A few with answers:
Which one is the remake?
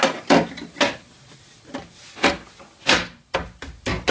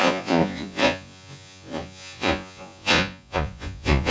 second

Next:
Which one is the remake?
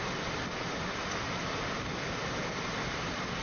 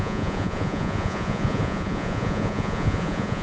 second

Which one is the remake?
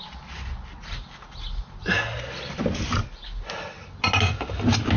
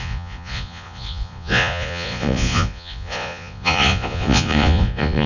second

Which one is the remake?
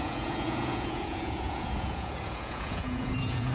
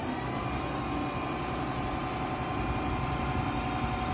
first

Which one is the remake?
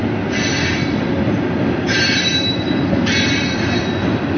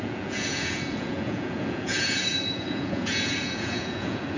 second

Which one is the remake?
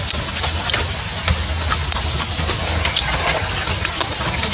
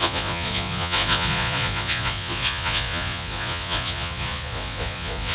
second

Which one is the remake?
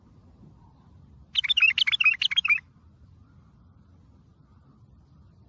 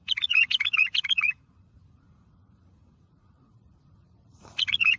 second